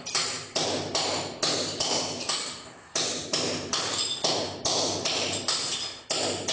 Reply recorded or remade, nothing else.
recorded